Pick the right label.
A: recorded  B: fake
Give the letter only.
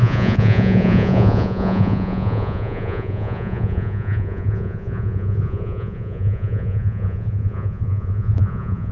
B